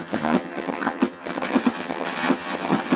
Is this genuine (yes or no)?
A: no